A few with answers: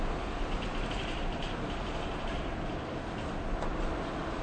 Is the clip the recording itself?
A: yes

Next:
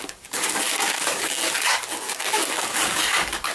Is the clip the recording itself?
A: no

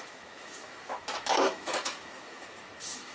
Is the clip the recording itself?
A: no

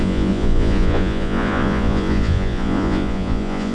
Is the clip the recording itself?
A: no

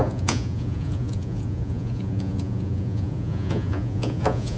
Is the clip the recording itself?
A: no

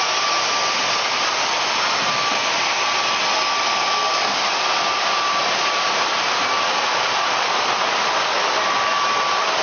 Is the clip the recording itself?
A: yes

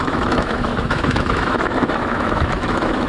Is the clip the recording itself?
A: no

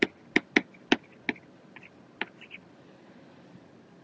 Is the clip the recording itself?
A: yes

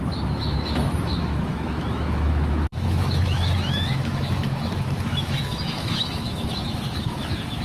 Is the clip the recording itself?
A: no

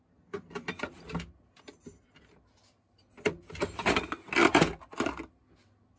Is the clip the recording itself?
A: yes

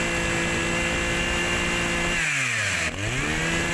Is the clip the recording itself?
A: yes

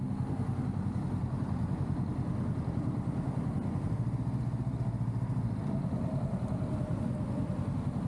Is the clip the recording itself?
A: yes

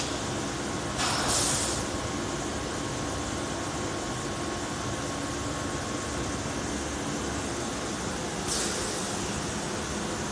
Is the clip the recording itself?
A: yes